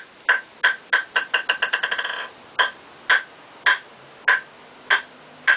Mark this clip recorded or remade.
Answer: recorded